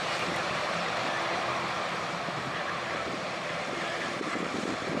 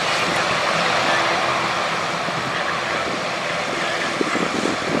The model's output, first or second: first